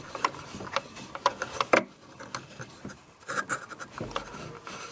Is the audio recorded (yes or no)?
yes